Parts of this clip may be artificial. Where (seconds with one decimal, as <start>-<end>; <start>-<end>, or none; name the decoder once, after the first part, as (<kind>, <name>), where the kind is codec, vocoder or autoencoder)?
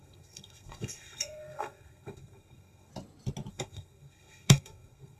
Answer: 0.0-2.9 (codec, SNAC); 3.5-5.2